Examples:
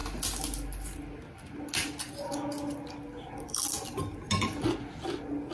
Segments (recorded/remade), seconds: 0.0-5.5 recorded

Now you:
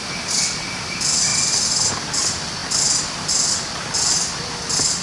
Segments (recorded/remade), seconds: 0.0-5.0 recorded

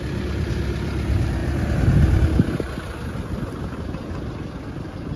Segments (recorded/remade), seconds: 0.0-5.2 recorded

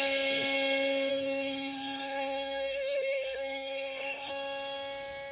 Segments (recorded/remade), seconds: 0.0-1.1 recorded; 1.1-4.3 remade; 4.3-5.3 recorded

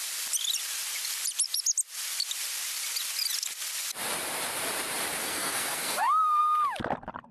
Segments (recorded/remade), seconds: 0.0-5.2 recorded; 5.2-6.4 remade; 6.4-7.3 recorded

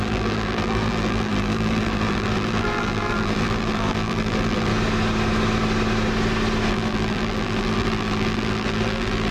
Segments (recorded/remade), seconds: 0.0-4.7 remade; 4.7-6.7 recorded; 6.7-9.3 remade